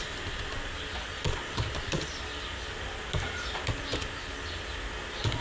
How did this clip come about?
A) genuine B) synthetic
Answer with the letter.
A